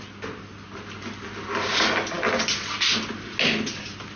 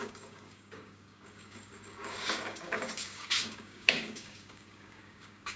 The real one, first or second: first